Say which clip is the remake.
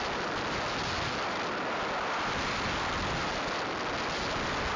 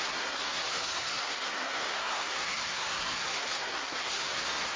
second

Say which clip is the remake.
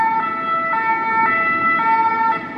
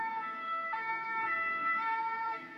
second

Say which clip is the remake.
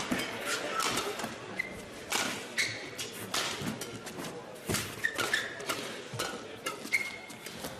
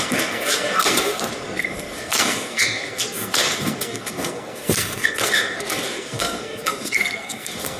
second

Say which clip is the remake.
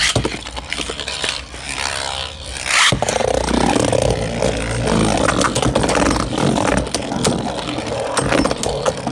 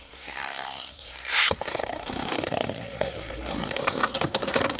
second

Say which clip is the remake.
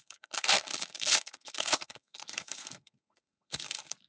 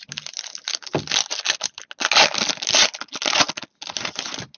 first